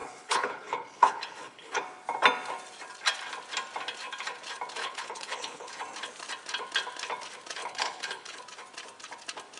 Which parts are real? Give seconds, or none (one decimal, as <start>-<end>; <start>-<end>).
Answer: 1.8-4.8; 5.7-7.6; 8.4-9.6